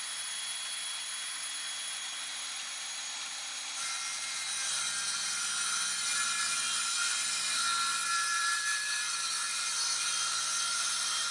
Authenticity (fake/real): fake